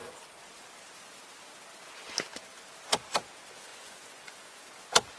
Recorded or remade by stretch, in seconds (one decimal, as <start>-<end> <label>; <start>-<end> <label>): 0.0-3.7 recorded; 3.7-4.6 remade; 4.6-5.2 recorded

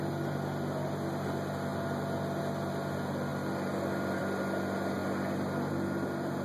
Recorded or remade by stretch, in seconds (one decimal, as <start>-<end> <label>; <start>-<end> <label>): 0.0-6.4 recorded